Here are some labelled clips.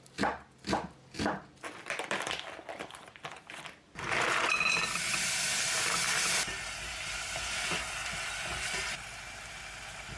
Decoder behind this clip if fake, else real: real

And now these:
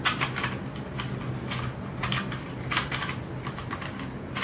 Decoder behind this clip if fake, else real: real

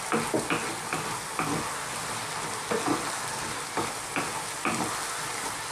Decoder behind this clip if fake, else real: real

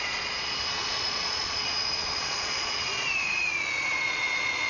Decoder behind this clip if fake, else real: fake, vocoder, Vocos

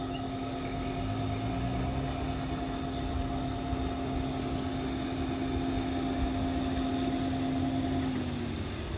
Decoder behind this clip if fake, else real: real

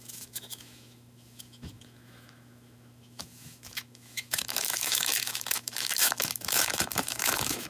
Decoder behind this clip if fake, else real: fake, autoencoder, DAC-VAE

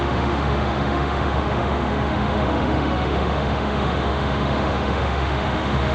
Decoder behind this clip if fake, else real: fake, autoencoder, DAC-VAE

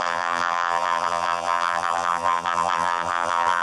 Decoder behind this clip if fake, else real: fake, vocoder, BigVGAN v2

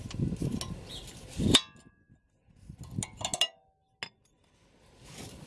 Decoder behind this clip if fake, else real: real